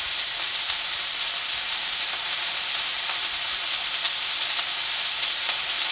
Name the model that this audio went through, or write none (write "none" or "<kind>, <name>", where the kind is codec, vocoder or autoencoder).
vocoder, BigVGAN v2